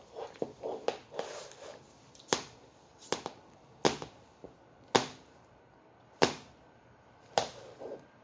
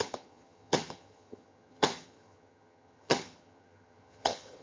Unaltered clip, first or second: first